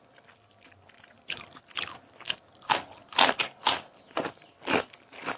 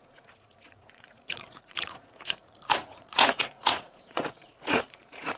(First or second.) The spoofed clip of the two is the second